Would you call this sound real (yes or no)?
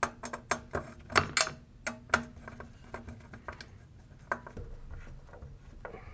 yes